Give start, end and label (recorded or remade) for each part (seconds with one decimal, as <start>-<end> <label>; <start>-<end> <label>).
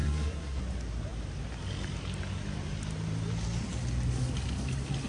0.0-0.6 remade; 0.6-5.1 recorded